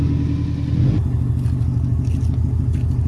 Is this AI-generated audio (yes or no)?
no